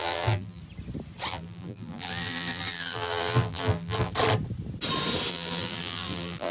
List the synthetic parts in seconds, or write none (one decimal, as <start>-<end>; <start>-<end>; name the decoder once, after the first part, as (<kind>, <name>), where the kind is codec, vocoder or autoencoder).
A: 0.0-0.6 (vocoder, BigVGAN v2); 1.3-4.1; 5.3-6.5